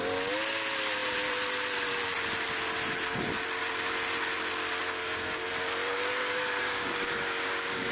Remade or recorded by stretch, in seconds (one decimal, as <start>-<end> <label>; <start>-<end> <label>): 0.0-5.0 recorded; 5.0-5.5 remade; 5.5-6.2 recorded; 6.2-7.9 remade